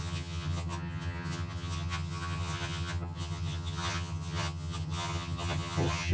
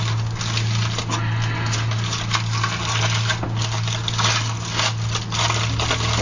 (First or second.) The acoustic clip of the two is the second